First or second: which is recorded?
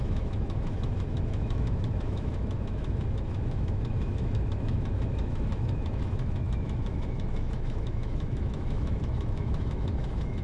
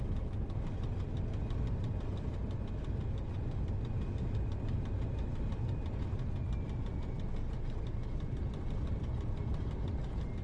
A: second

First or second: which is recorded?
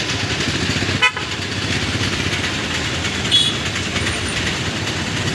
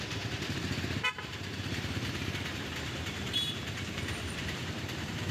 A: first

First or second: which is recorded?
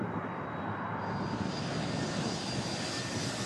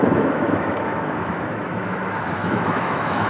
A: first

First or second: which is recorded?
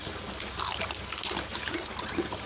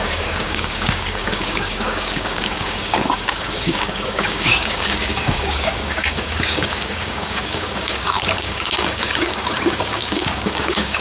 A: first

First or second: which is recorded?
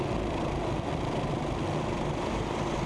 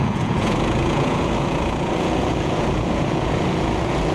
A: first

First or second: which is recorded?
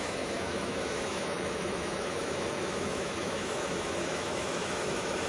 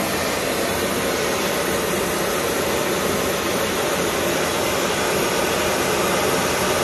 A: second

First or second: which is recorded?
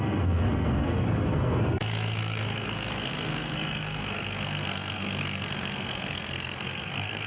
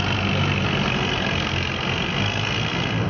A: second